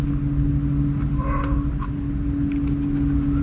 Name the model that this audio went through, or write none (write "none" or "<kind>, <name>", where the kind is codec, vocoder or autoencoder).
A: none